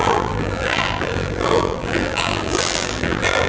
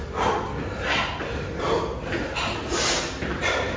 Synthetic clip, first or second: first